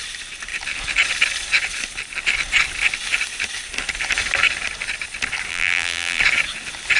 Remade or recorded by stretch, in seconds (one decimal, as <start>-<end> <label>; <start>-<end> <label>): 0.0-5.5 recorded; 5.5-6.2 remade; 6.2-7.0 recorded